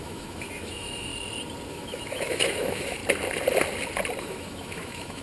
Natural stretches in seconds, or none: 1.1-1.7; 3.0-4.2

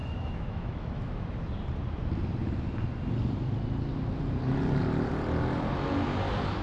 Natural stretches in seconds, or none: 1.4-6.6

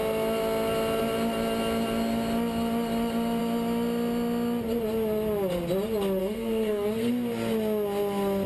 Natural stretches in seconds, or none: 0.0-6.2; 7.1-8.5

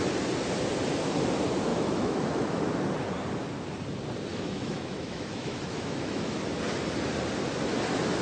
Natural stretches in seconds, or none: 0.0-1.7; 2.6-4.3; 6.4-8.2

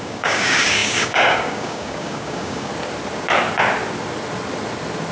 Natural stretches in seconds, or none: 2.7-5.1

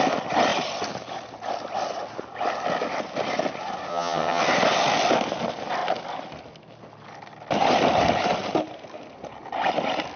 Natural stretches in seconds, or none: 0.0-3.9; 4.4-10.2

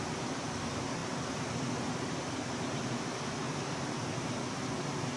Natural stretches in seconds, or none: 0.0-5.2

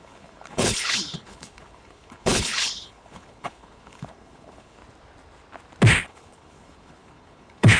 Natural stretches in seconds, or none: 4.8-6.0